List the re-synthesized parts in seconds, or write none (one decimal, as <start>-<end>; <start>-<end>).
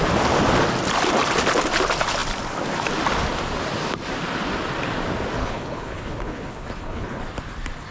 5.4-7.2